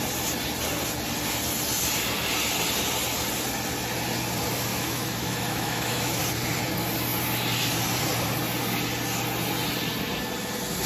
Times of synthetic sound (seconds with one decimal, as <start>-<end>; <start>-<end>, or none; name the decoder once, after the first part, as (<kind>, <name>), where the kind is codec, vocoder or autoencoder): 4.7-6.2 (autoencoder, DAC-VAE)